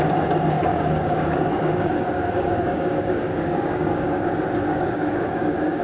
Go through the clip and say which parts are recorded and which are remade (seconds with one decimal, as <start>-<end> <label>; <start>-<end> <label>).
0.0-0.7 recorded; 0.7-4.2 remade; 4.2-4.7 recorded; 4.7-5.8 remade